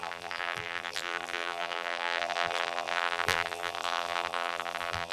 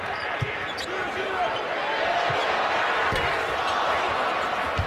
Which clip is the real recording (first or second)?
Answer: second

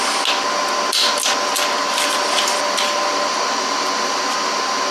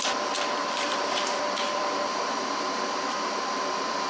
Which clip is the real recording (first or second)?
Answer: first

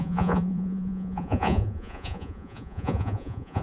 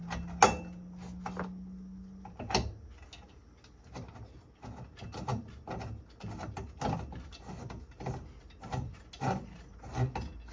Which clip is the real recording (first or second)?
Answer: second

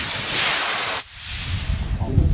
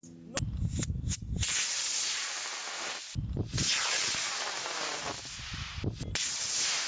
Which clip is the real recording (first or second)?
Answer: second